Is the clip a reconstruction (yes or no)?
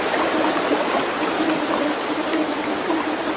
no